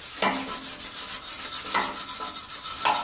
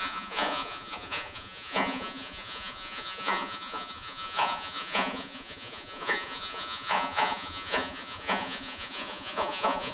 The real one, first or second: first